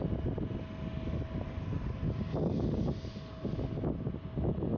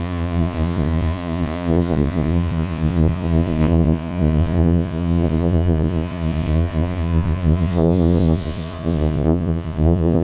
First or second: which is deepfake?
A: second